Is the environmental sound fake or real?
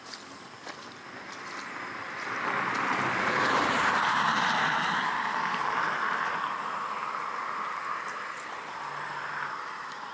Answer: real